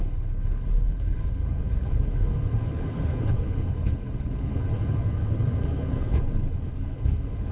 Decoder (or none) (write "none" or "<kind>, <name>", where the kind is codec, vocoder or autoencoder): codec, HILCodec